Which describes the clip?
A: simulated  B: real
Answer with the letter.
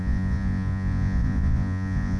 A